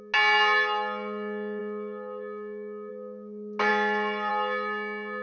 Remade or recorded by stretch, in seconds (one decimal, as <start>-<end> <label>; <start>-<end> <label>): 0.0-5.2 recorded